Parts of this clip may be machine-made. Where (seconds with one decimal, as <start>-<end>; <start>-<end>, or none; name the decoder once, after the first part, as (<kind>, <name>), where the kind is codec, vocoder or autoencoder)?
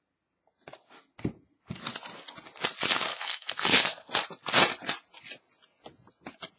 3.1-4.1 (codec, SNAC)